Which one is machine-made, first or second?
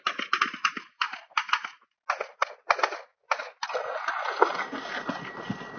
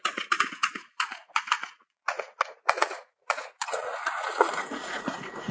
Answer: second